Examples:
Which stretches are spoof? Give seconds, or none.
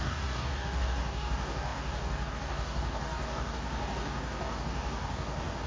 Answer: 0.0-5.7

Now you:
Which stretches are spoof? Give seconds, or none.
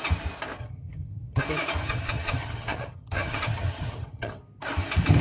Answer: 0.6-1.4; 1.8-4.4